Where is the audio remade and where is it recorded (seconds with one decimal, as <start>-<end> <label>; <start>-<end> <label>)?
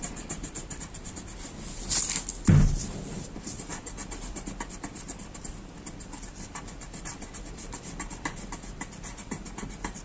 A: 0.0-0.6 remade; 0.6-2.8 recorded; 2.8-10.0 remade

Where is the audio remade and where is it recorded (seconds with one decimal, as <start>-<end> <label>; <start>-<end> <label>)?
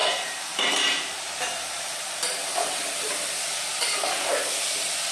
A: 0.0-3.1 remade; 3.1-5.1 recorded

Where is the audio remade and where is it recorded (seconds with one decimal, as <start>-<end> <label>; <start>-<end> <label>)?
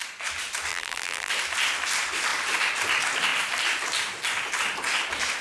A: 0.0-0.7 recorded; 0.7-1.3 remade; 1.3-5.4 recorded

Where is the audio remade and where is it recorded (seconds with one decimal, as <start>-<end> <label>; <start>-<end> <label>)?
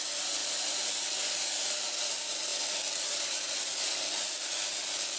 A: 0.0-5.2 remade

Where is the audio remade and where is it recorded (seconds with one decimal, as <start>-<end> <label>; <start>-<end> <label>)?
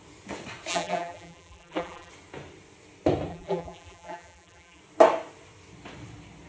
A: 0.0-0.7 recorded; 0.7-2.1 remade; 2.1-3.3 recorded; 3.3-4.8 remade; 4.8-6.5 recorded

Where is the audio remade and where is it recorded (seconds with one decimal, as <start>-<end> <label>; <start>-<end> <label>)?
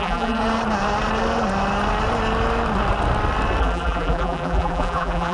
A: 0.0-0.4 remade; 0.4-3.6 recorded; 3.6-5.3 remade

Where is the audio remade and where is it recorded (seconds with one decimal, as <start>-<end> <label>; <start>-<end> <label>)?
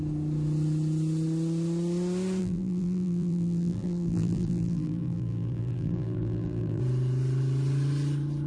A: 0.0-2.4 recorded; 2.4-6.8 remade; 6.8-8.5 recorded